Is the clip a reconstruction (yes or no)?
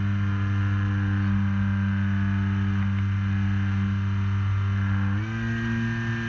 no